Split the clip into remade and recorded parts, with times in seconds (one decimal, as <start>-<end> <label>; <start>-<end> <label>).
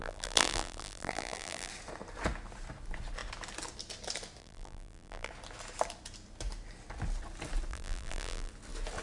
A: 0.0-1.7 remade; 1.7-4.4 recorded; 4.4-5.3 remade; 5.3-7.7 recorded; 7.7-8.5 remade; 8.5-9.0 recorded